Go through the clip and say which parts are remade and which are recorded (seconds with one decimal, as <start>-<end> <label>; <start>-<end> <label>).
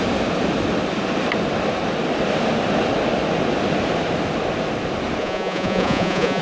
0.0-5.2 recorded; 5.2-6.4 remade